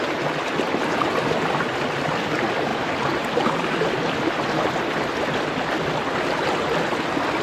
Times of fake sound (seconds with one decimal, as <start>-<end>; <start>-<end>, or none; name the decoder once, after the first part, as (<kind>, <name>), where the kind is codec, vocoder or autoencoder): none